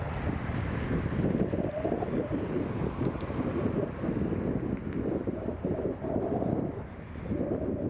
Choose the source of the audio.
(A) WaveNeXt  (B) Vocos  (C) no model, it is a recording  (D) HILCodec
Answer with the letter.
C